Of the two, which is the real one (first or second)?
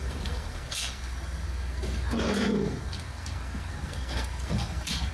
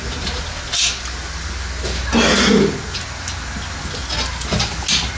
second